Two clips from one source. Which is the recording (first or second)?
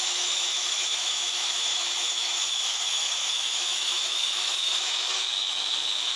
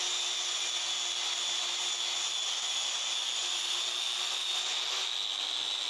second